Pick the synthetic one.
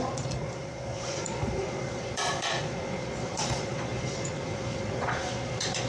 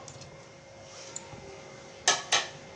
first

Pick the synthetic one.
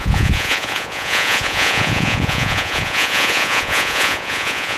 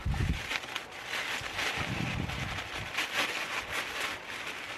first